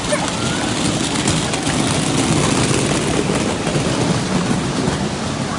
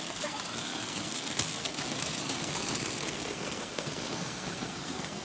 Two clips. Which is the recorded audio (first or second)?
first